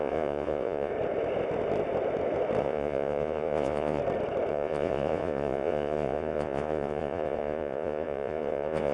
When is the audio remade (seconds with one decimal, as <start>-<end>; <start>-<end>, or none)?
0.0-0.9; 2.6-4.0; 4.5-8.9